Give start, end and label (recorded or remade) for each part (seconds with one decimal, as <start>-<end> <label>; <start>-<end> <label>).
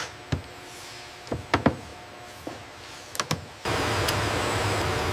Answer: 0.0-5.1 recorded